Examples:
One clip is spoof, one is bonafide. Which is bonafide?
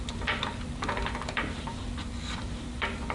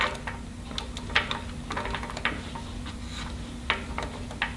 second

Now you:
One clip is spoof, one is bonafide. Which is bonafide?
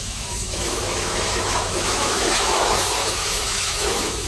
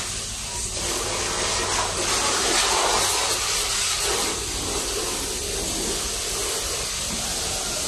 second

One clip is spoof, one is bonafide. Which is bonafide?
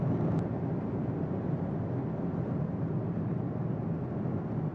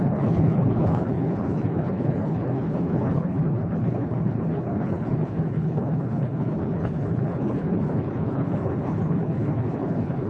first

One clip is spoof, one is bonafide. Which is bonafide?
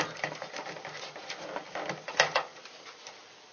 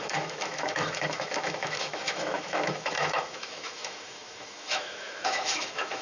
first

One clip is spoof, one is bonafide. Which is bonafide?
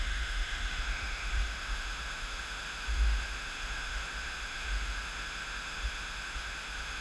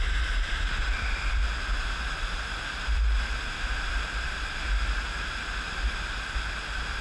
second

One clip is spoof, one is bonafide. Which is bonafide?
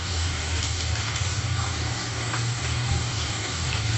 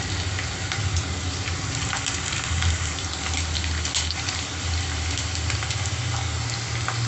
second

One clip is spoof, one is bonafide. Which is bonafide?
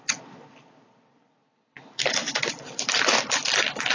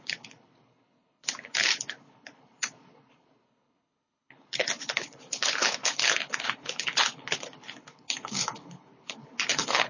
first